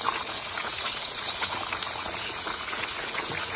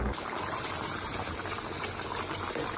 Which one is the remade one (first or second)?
first